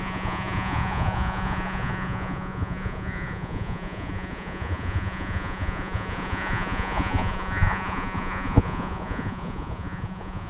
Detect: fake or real fake